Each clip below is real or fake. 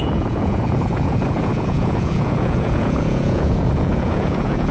fake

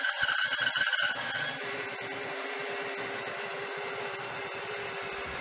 real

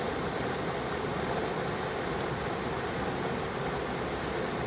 real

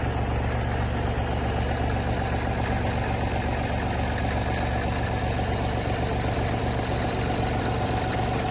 real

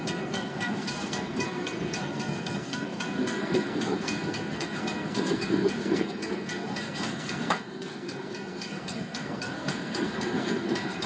fake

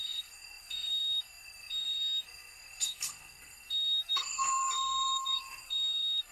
fake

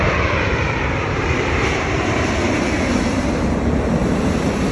fake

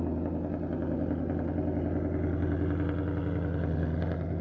real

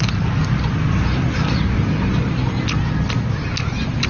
real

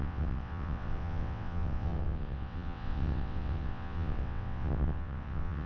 fake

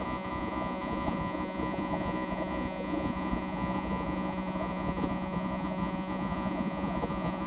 fake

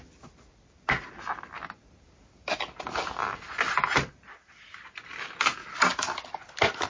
real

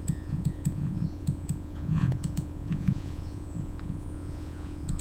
fake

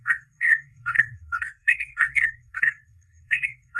fake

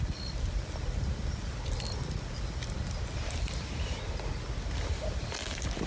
real